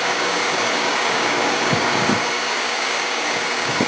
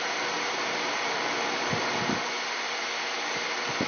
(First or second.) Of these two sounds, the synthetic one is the first